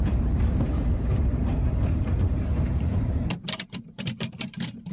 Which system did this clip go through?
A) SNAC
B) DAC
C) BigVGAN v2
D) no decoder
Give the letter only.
C